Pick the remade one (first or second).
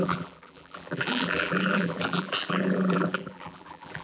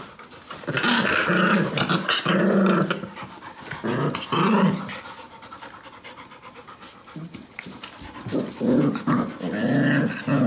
first